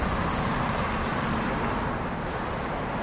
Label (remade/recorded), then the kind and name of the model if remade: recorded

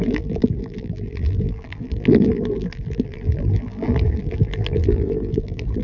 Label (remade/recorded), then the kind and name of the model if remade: remade, vocoder, BigVGAN v2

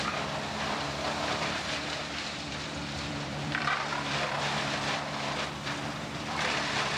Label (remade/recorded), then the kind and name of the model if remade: remade, vocoder, BigVGAN v2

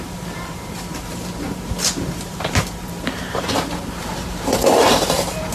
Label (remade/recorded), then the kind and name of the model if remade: remade, vocoder, BigVGAN v2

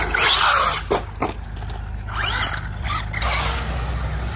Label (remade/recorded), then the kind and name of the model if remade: recorded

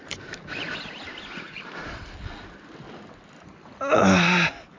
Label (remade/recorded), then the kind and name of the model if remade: recorded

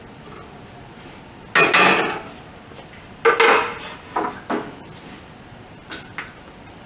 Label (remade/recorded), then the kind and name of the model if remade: recorded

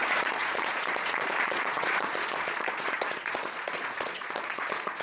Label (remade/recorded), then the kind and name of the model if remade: remade, vocoder, Vocos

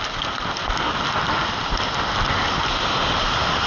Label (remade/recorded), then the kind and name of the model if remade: recorded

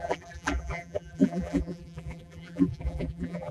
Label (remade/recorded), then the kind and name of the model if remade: remade, vocoder, BigVGAN v2